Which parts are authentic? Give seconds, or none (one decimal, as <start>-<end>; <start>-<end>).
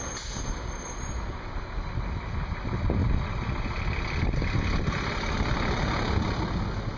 0.0-3.0; 3.6-7.0